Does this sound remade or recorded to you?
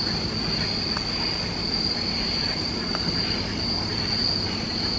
recorded